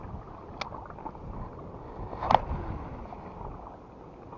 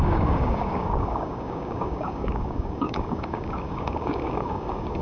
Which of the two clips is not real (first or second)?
second